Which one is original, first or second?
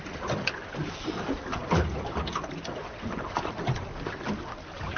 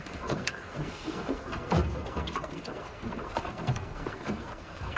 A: first